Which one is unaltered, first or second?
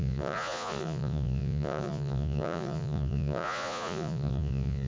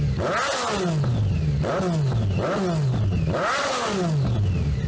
second